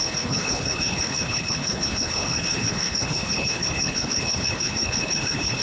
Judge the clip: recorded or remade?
remade